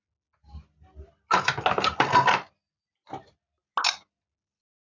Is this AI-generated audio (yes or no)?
no